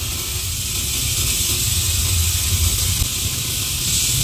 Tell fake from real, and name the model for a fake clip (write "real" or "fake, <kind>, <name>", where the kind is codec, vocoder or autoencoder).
real